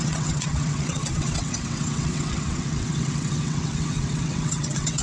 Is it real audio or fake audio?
fake